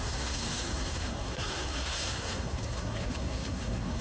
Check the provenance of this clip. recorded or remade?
remade